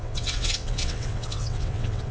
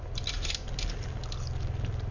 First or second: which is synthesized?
first